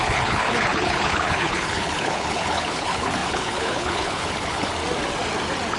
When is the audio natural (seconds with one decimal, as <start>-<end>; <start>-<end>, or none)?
4.7-5.8

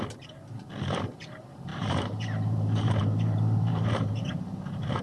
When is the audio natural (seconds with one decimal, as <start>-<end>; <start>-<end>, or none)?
0.0-1.7

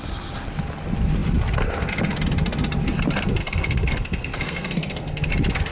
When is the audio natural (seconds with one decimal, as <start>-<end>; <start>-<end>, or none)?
0.0-3.4; 5.3-5.7

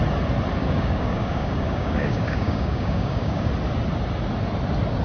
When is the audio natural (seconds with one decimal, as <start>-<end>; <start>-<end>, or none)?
0.0-0.6; 3.5-5.0

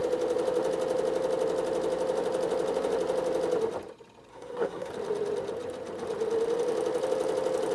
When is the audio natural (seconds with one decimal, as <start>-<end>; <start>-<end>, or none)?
0.0-4.3; 4.9-7.7

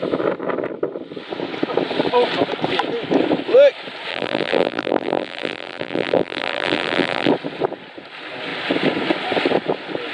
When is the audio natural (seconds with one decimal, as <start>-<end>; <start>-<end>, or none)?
0.0-4.1; 7.3-10.1

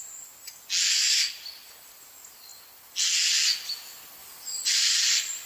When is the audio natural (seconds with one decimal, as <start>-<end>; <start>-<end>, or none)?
0.0-4.2; 4.9-5.5